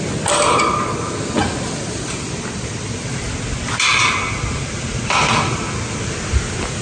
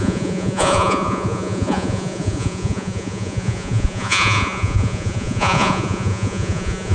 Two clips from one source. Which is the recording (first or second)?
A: first